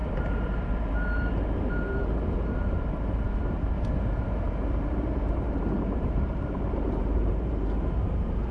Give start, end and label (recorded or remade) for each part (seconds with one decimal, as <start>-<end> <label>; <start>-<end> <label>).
0.0-8.5 remade